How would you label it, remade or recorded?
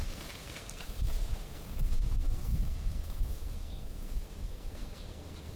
remade